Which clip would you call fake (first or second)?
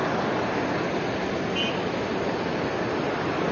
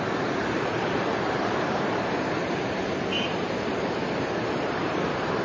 second